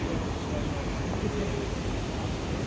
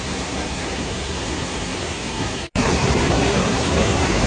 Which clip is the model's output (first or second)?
second